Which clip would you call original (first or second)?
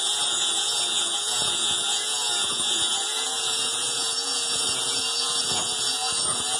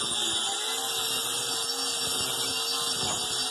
second